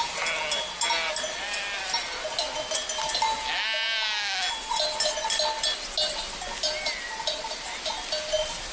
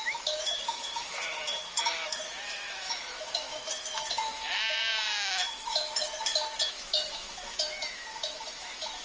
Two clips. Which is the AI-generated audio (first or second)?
second